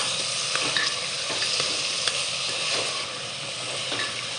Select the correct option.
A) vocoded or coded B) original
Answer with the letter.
A